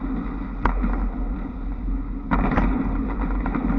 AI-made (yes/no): no